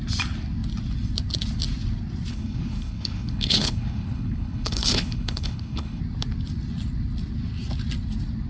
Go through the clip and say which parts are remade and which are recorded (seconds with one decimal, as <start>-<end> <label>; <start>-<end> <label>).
0.0-2.3 recorded; 2.3-6.0 remade; 6.0-8.5 recorded